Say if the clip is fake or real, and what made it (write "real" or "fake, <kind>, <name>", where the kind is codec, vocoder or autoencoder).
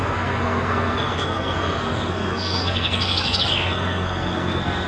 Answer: fake, codec, SNAC